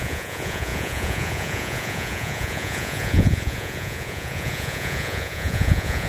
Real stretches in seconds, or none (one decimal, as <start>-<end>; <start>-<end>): none